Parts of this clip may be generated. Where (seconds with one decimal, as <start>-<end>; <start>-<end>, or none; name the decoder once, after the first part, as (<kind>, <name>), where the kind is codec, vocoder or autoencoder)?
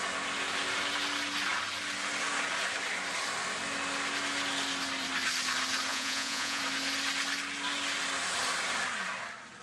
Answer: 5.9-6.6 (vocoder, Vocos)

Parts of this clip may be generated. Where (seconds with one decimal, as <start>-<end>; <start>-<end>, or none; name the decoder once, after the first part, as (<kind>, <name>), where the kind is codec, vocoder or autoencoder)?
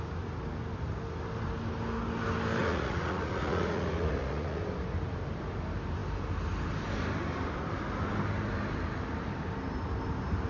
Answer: 2.6-4.6 (vocoder, Vocos)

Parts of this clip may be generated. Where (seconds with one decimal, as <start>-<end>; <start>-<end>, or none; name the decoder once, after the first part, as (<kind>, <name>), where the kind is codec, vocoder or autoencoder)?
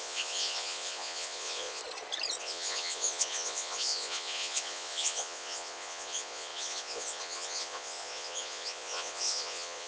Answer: 0.0-1.8 (vocoder, Vocos); 2.4-9.9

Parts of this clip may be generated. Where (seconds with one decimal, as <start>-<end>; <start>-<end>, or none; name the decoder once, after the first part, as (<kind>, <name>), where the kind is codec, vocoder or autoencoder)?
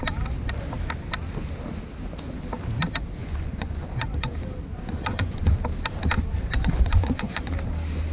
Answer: 3.2-4.3 (vocoder, Vocos); 4.7-5.5; 6.3-7.5